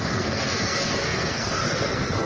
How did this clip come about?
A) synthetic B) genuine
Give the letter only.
A